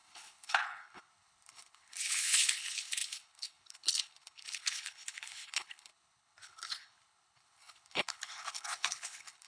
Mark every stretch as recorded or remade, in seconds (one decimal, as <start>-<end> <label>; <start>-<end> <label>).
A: 0.0-9.5 remade